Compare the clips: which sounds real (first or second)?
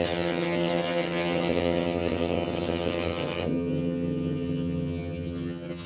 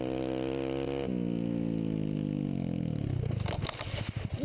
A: second